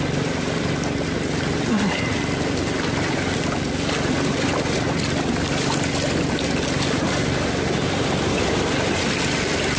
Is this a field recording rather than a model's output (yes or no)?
yes